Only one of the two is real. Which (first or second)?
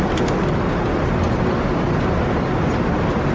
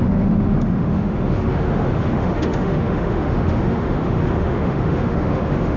first